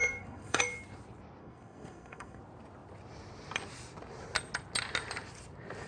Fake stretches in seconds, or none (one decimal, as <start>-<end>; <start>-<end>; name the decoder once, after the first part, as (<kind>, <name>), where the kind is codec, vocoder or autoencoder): 0.0-0.6 (codec, SNAC); 1.4-2.4